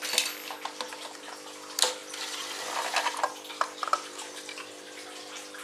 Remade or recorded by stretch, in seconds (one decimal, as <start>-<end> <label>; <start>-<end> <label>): 0.0-2.0 recorded; 2.0-3.2 remade; 3.2-5.6 recorded